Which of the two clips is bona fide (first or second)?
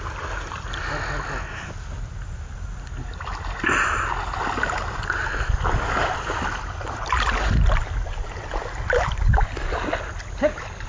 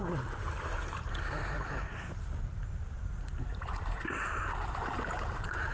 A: first